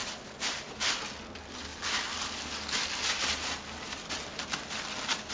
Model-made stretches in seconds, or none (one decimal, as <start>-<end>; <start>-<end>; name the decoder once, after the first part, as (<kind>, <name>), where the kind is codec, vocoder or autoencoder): none